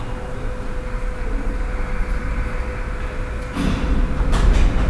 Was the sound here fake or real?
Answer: real